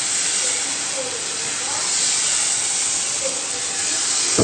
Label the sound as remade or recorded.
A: recorded